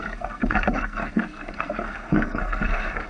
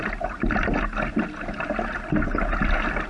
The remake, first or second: first